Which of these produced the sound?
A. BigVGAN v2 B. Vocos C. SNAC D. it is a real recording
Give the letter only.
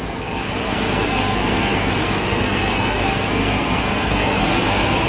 C